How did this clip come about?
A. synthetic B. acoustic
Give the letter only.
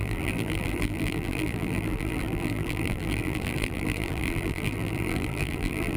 A